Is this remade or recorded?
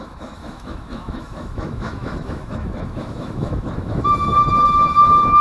remade